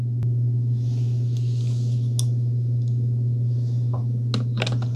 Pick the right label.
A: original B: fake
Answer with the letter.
A